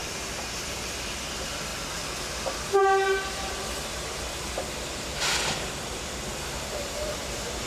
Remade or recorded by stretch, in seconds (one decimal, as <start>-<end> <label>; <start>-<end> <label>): 0.0-7.7 recorded